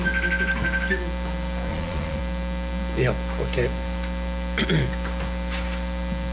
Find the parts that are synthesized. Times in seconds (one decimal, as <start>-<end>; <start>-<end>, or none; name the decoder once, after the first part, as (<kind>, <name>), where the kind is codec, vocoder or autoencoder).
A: 1.7-2.2 (vocoder, Vocos)